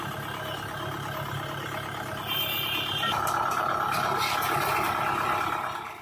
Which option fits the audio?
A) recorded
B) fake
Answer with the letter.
A